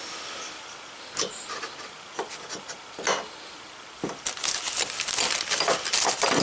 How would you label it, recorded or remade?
recorded